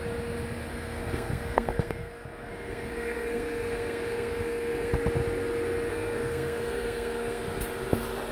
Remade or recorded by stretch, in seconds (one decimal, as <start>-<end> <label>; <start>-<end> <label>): 0.0-0.7 recorded; 0.7-4.9 remade; 4.9-5.9 recorded; 5.9-7.4 remade; 7.4-8.3 recorded